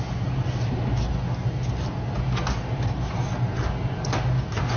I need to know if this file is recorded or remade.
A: recorded